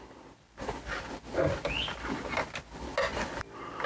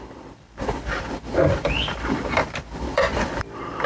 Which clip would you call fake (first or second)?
second